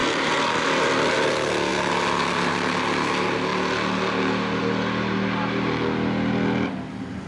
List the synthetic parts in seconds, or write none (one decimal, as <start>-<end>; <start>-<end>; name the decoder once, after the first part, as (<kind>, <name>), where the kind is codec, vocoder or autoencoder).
none